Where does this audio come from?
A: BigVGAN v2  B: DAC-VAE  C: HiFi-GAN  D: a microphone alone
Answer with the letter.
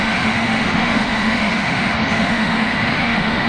B